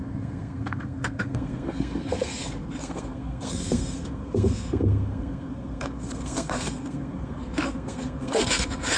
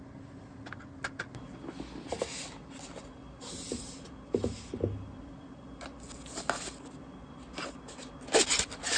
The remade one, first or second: first